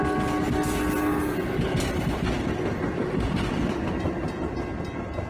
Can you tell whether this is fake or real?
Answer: real